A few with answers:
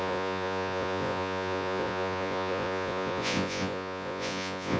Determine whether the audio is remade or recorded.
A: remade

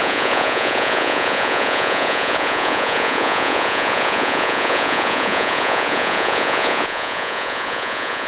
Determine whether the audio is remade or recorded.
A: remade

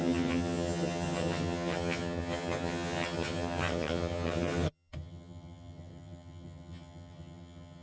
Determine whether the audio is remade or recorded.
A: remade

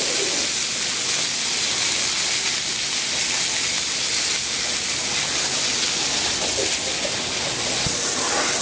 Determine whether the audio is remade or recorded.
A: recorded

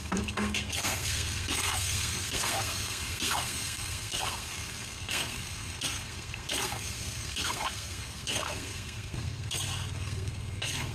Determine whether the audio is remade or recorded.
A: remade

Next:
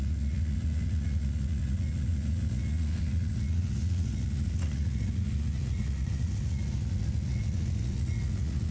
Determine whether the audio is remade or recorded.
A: remade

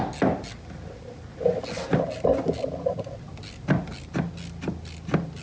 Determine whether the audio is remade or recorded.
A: recorded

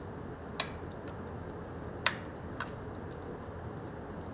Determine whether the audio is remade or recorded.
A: recorded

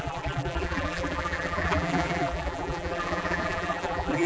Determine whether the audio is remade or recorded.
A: remade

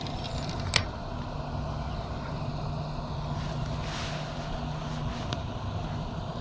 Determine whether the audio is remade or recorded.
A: recorded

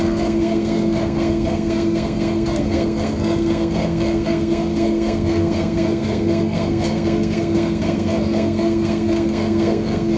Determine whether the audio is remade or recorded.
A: remade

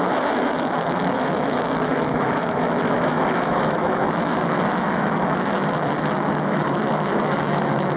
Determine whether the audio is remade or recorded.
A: remade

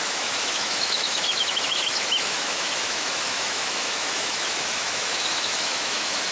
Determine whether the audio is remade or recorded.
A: remade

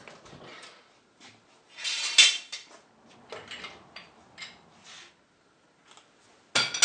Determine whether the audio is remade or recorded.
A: recorded